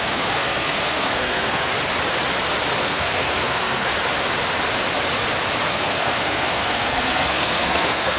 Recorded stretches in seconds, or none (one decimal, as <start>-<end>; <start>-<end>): 1.7-2.8; 3.9-5.7